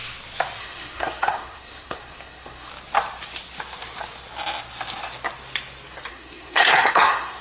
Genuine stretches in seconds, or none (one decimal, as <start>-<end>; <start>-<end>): 0.0-0.6; 2.7-6.1